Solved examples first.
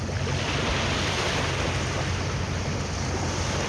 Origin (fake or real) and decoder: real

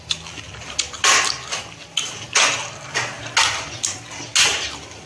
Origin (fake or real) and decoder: real